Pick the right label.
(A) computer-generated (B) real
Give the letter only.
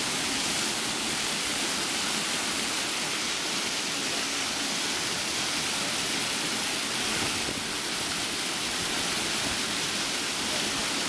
B